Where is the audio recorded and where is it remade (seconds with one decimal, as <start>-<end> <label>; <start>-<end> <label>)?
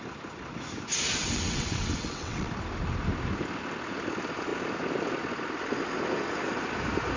0.0-1.2 recorded; 1.2-2.5 remade; 2.5-7.2 recorded